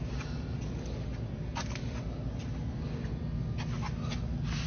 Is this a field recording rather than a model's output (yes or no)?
yes